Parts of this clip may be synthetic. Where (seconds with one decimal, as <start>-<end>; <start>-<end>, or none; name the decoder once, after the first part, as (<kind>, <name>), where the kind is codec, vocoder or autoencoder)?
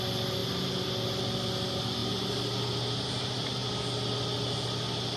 none